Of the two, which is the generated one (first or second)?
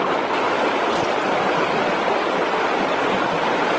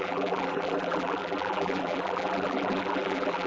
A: second